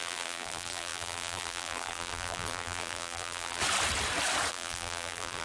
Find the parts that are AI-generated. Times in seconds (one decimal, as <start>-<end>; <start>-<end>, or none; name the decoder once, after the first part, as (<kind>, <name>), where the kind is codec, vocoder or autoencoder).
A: 0.0-3.6 (vocoder, BigVGAN v2); 4.5-5.4